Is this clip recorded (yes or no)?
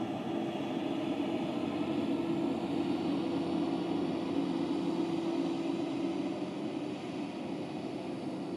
yes